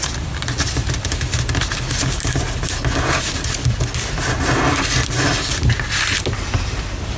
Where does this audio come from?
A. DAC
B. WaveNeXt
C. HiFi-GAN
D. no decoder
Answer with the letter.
D